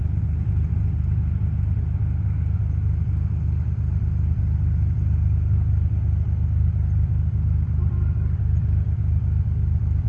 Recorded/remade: recorded